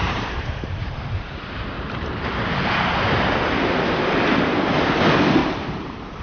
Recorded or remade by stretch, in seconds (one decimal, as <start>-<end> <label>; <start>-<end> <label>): 0.0-3.7 remade; 3.7-5.4 recorded; 5.4-6.2 remade